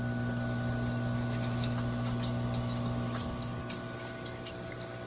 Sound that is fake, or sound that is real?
real